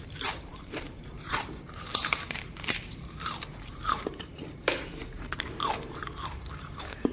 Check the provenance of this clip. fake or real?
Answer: fake